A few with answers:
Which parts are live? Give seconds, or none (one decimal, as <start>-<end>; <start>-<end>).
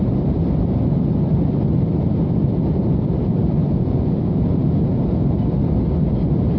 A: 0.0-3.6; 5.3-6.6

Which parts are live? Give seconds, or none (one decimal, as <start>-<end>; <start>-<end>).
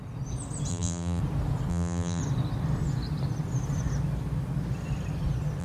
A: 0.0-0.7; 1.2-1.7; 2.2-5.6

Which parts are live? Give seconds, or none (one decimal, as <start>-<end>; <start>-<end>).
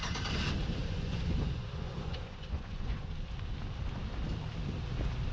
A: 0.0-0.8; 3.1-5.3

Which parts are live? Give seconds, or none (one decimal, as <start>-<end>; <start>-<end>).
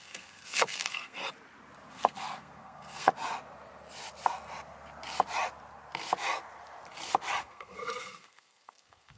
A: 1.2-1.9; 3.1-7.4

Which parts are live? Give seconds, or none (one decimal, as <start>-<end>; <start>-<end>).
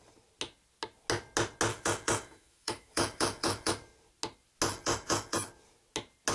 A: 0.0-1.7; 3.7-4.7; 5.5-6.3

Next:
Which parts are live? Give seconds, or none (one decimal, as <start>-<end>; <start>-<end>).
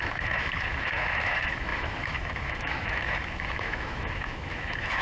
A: none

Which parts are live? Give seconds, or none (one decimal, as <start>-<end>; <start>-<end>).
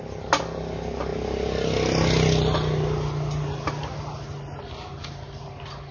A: 0.0-5.9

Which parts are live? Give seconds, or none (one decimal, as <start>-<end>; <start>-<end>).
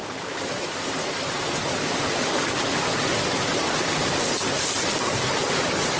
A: 0.0-6.0